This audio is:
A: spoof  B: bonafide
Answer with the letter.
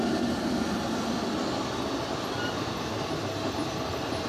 B